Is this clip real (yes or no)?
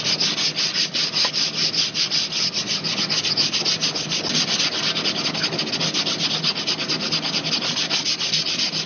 yes